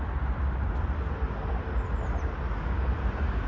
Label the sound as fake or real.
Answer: real